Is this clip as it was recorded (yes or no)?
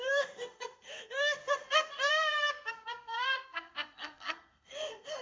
no